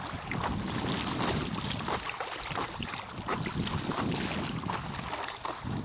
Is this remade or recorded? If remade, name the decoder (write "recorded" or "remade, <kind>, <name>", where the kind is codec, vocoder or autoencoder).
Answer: recorded